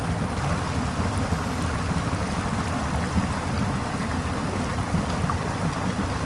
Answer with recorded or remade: recorded